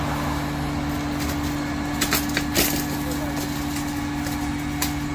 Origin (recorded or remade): recorded